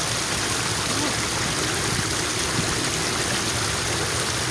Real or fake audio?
real